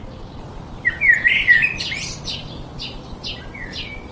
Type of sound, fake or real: real